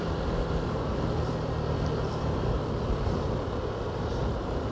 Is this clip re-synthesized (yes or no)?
no